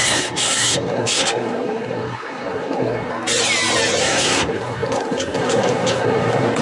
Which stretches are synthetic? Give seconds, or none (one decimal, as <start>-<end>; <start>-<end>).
0.0-3.1; 4.0-6.6